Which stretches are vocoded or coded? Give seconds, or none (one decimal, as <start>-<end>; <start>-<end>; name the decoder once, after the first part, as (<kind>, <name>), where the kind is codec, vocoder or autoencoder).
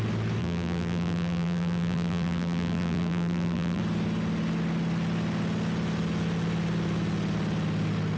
0.4-3.8 (vocoder, BigVGAN v2)